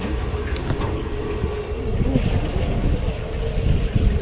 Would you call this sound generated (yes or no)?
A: no